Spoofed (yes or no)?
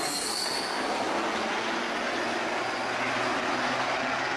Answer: no